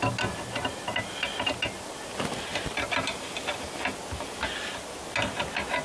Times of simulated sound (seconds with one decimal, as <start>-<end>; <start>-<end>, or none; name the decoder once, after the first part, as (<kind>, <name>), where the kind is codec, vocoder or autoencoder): 2.5-3.6 (vocoder, BigVGAN v2)